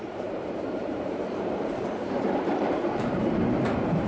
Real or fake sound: fake